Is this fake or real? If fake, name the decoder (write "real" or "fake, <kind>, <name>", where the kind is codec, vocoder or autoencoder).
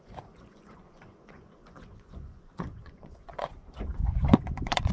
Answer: fake, vocoder, Vocos